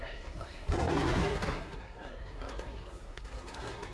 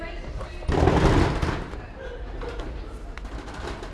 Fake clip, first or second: first